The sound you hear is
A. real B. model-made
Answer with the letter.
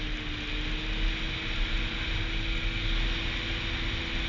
A